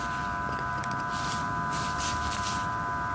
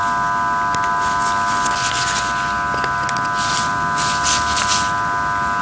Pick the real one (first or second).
second